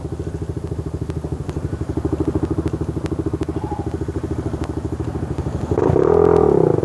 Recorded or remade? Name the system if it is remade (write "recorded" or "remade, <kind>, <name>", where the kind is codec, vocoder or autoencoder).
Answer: recorded